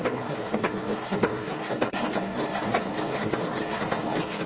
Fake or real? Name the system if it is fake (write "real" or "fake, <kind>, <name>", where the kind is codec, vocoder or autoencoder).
fake, codec, SNAC